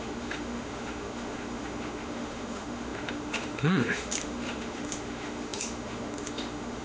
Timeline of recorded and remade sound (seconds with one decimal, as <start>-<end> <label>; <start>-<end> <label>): 0.0-6.8 remade